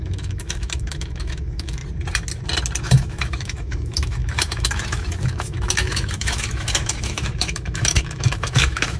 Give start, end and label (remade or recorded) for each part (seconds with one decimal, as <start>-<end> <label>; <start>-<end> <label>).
0.0-1.8 remade; 1.8-2.8 recorded; 2.8-9.0 remade